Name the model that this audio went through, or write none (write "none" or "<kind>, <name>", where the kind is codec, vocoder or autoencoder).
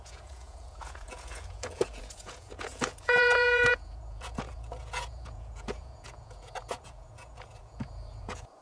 vocoder, Vocos